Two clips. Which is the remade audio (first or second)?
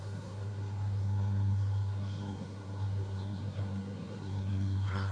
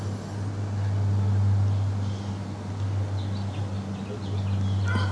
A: first